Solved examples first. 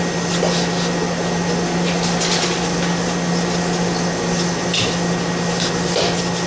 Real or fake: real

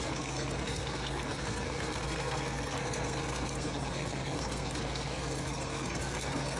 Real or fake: fake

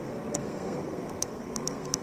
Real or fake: fake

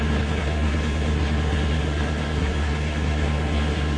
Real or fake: fake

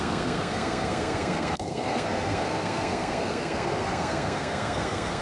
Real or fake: fake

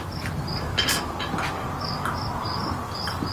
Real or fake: real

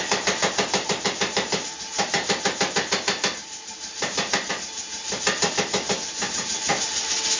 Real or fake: real